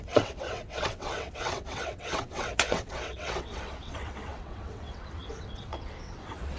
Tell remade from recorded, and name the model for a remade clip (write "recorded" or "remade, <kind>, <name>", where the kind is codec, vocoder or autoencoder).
remade, vocoder, WaveNeXt